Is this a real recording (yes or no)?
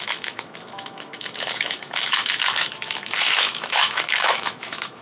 no